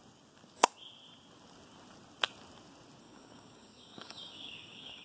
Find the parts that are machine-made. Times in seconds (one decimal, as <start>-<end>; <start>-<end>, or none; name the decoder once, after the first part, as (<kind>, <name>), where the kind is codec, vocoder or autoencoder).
3.0-5.0 (codec, DAC)